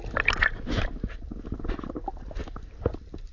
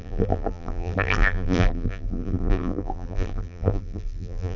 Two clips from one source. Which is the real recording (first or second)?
first